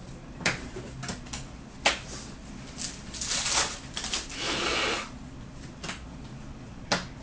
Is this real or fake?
real